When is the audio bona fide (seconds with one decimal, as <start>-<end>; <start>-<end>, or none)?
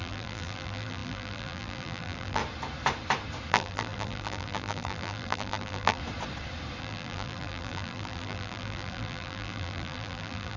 2.4-3.5; 6.0-6.8